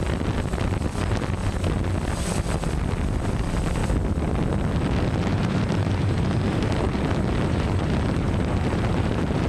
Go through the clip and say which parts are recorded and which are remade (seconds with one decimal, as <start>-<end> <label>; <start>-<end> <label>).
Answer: 0.0-5.3 recorded; 5.3-9.5 remade

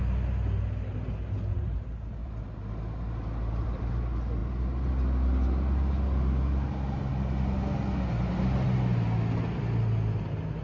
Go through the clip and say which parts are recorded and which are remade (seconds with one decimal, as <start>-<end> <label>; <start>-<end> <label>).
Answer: 0.0-2.2 recorded; 2.2-3.9 remade; 3.9-10.6 recorded